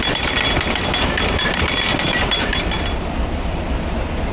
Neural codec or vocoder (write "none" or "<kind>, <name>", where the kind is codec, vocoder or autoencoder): none